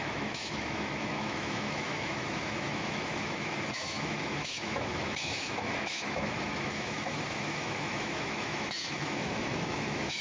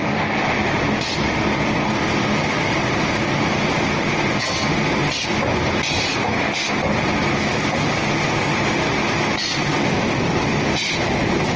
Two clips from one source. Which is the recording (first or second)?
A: second